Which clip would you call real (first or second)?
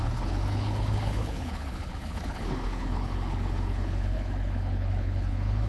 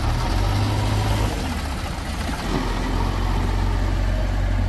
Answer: second